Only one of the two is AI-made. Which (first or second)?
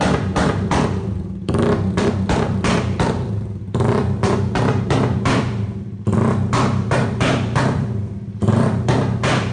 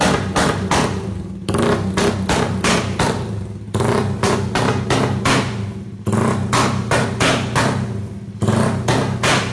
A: first